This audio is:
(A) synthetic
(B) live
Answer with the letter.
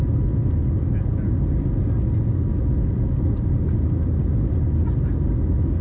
B